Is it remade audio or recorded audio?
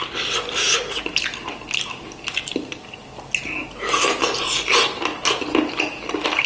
recorded